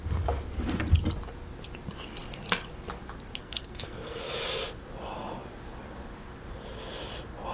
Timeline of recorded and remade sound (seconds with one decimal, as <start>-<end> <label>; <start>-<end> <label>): 0.0-3.4 recorded; 3.4-4.2 remade; 4.2-7.5 recorded